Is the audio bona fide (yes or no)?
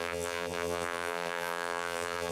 no